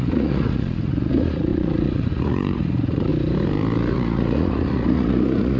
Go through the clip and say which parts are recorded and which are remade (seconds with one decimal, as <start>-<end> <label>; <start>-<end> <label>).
0.0-3.1 remade; 3.1-3.9 recorded; 3.9-5.6 remade